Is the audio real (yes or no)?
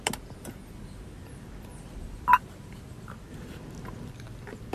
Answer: yes